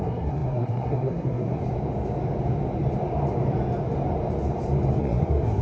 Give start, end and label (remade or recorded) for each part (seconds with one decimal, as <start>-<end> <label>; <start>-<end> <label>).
0.0-1.6 remade; 1.6-5.0 recorded; 5.0-5.6 remade